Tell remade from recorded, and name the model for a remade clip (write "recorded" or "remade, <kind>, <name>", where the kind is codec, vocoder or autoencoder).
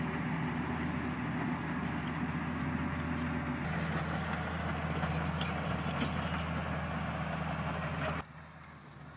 recorded